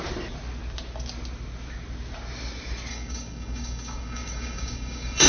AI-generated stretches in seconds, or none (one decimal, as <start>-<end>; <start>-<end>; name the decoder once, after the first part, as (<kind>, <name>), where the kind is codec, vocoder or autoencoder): 2.9-5.3 (codec, DAC)